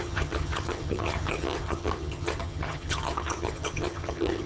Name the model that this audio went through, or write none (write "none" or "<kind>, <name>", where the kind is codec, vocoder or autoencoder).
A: vocoder, HiFi-GAN